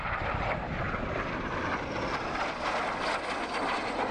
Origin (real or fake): real